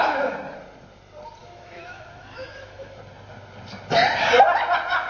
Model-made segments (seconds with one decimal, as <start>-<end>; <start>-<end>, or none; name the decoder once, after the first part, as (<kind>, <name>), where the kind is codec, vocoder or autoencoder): 1.4-3.0 (autoencoder, DAC-VAE)